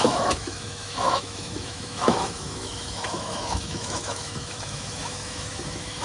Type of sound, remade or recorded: remade